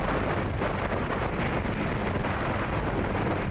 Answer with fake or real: real